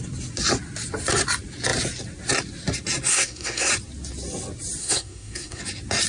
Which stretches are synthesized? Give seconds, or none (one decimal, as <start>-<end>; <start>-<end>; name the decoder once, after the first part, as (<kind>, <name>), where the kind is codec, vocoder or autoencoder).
3.1-3.7 (codec, SNAC); 4.8-5.6